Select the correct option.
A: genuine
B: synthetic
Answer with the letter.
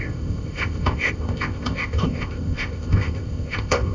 B